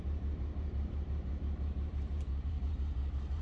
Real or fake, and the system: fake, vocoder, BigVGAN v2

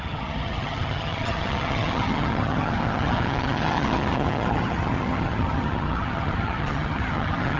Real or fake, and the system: fake, vocoder, HiFi-GAN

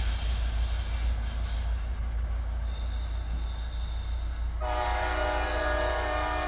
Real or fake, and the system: real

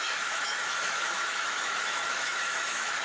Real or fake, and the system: fake, autoencoder, DAC-VAE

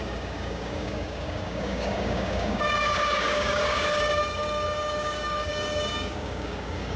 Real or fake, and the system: fake, codec, DAC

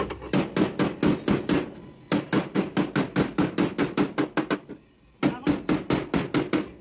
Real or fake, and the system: real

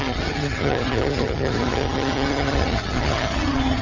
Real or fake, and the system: fake, vocoder, HiFi-GAN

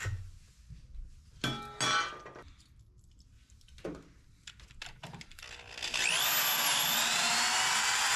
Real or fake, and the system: real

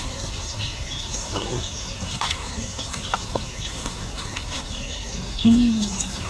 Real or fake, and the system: fake, codec, SNAC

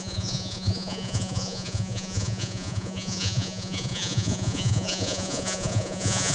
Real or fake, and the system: fake, vocoder, Vocos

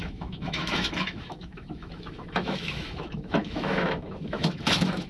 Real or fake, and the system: fake, autoencoder, DAC-VAE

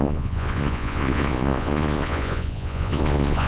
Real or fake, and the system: fake, vocoder, Vocos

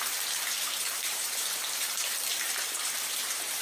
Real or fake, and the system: fake, vocoder, BigVGAN v2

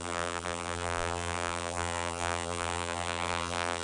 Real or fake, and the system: fake, vocoder, BigVGAN v2